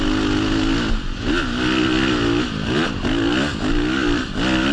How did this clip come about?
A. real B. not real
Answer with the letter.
A